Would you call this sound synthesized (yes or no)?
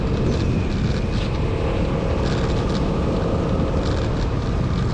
no